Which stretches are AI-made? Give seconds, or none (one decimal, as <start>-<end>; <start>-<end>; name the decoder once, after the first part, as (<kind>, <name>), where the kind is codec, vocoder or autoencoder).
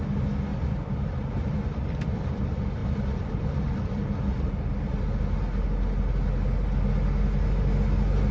0.5-2.4 (vocoder, BigVGAN v2); 2.8-4.5